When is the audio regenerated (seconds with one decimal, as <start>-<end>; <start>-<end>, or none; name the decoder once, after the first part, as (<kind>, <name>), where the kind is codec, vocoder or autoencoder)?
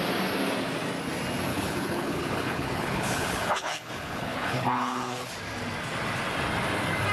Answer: 1.5-5.3 (codec, HILCodec)